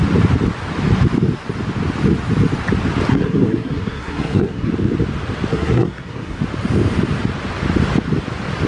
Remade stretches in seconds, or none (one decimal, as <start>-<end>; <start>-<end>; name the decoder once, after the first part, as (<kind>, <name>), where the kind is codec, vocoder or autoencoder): 3.1-4.7 (codec, SNAC); 5.5-6.4